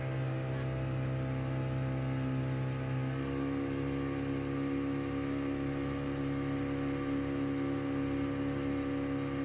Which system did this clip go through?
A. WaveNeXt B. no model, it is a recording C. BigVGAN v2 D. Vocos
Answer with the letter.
B